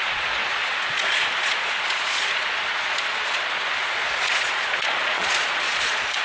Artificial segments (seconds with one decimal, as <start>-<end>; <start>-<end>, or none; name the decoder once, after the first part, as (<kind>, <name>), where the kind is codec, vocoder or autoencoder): 0.0-6.2 (vocoder, Vocos)